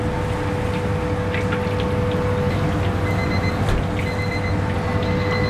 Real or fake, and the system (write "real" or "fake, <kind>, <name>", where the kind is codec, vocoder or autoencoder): real